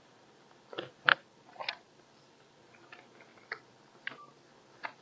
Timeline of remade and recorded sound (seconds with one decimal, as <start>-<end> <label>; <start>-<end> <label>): 0.0-5.0 recorded